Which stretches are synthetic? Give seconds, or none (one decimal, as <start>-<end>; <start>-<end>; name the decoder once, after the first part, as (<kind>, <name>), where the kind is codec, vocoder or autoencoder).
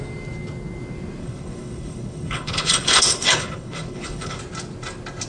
1.2-4.4 (codec, HILCodec)